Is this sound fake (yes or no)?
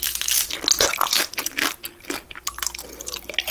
no